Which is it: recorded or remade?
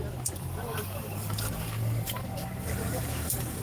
remade